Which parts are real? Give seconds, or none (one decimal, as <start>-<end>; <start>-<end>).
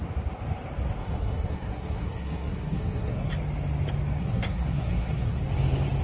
0.0-1.0; 3.3-4.2; 5.4-6.0